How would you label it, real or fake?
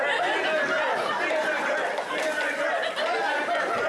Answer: real